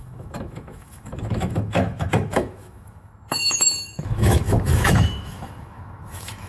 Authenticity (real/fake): fake